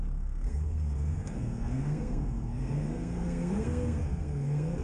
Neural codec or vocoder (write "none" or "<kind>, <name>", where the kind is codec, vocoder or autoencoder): codec, SNAC